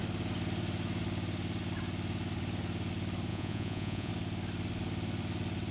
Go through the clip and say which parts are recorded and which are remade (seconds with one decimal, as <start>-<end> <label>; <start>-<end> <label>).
0.0-3.3 recorded; 3.3-4.1 remade; 4.1-5.7 recorded